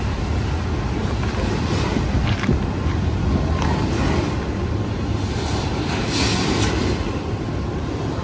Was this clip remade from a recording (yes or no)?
no